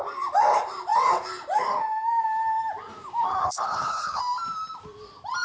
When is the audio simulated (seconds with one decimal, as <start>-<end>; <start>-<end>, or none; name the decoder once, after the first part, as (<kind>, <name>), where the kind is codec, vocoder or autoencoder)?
3.4-4.2 (codec, HILCodec)